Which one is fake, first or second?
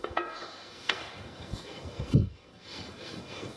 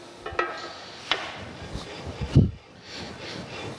first